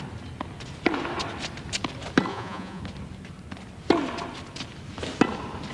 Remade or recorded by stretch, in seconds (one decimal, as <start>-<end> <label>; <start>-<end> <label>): 0.0-2.3 recorded; 2.3-2.8 remade; 2.8-5.7 recorded